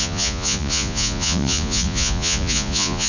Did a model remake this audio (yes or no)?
yes